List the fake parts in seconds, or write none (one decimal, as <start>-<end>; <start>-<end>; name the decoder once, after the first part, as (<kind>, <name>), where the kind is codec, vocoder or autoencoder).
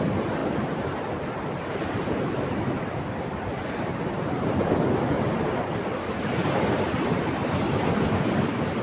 0.0-0.4 (vocoder, BigVGAN v2); 1.5-7.4; 8.2-8.8